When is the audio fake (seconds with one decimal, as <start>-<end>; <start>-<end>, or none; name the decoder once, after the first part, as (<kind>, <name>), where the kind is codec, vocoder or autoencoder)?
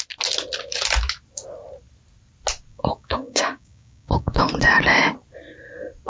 2.7-4.5 (codec, DAC)